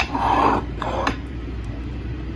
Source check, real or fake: fake